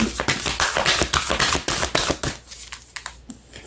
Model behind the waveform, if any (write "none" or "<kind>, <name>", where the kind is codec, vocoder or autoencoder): none